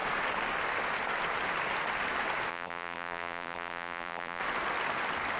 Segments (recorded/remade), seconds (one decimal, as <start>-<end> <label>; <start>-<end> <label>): 0.0-2.5 recorded; 2.5-4.4 remade; 4.4-5.4 recorded